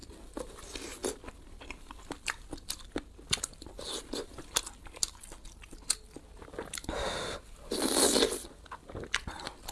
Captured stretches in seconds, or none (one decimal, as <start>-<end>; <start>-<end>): 0.0-9.7